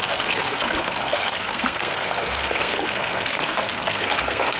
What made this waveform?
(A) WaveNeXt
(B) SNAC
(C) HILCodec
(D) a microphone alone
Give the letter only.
B